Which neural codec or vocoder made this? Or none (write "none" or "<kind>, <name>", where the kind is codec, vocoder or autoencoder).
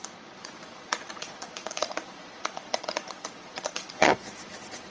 vocoder, Vocos